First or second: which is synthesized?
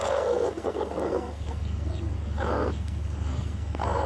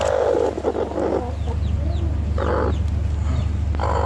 first